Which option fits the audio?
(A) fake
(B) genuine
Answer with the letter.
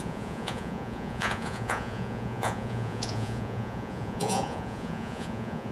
A